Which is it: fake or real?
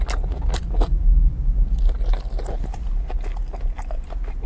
real